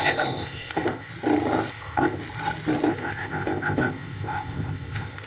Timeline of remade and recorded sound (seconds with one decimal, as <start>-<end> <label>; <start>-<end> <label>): 0.0-1.1 remade; 1.1-1.7 recorded; 1.7-2.2 remade; 2.2-2.9 recorded; 2.9-5.3 remade